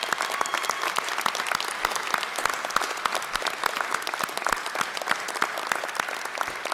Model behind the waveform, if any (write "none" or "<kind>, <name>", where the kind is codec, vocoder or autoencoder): none